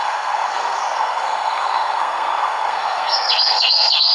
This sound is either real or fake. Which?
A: fake